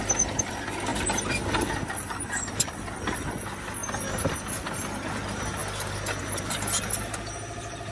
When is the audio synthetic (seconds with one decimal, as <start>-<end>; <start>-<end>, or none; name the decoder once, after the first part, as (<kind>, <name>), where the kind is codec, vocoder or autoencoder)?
0.0-0.9 (vocoder, BigVGAN v2); 2.4-3.8; 4.3-5.6; 6.2-7.9